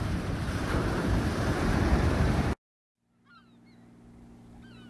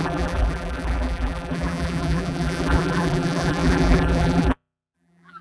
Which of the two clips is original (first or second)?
first